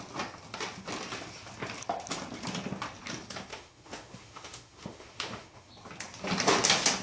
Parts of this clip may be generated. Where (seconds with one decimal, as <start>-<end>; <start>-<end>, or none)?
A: 3.5-5.7